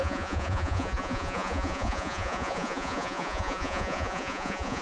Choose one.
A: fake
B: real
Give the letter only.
A